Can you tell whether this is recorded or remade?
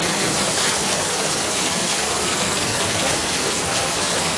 remade